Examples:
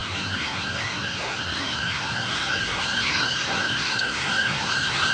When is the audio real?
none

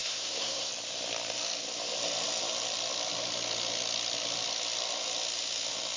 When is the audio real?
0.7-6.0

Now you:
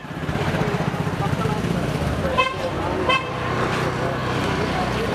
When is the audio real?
4.2-5.1

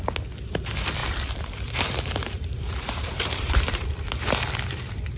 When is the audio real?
0.0-1.0; 4.0-5.2

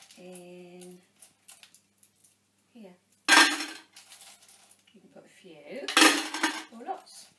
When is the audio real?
0.0-7.4

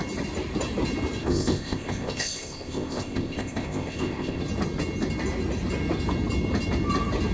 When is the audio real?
0.0-1.2; 4.4-7.3

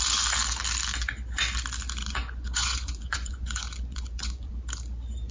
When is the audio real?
0.0-2.0; 4.5-5.3

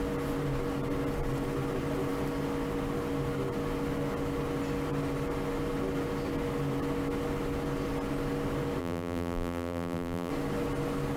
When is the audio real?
0.0-8.8; 10.3-11.2